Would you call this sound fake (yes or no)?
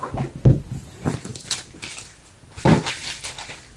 no